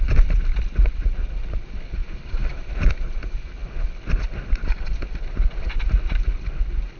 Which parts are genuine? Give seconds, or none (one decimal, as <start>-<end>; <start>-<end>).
0.0-2.0; 2.9-7.0